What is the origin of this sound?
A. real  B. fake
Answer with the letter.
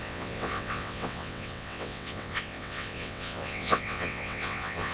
B